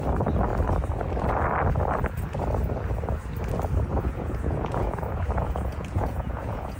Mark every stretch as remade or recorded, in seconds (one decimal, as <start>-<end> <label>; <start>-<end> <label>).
0.0-3.9 recorded; 3.9-6.8 remade

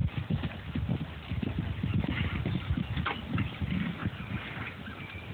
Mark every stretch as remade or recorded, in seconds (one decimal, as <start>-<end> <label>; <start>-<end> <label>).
0.0-5.3 recorded

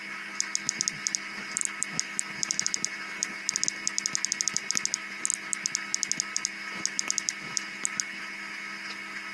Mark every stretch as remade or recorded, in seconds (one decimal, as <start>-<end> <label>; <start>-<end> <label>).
0.0-9.3 recorded

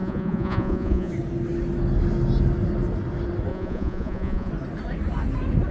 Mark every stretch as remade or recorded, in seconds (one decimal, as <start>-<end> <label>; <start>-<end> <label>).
0.0-1.1 remade; 1.1-3.5 recorded; 3.5-4.5 remade; 4.5-5.7 recorded

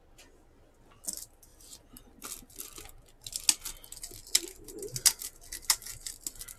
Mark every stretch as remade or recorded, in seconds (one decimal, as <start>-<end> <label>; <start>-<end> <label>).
0.0-1.5 recorded; 1.5-2.1 remade; 2.1-6.6 recorded